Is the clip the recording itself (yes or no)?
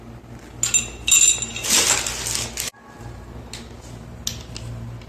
yes